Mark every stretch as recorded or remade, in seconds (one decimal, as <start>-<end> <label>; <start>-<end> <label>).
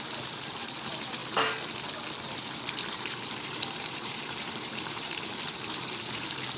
0.0-1.2 remade; 1.2-2.2 recorded; 2.2-6.6 remade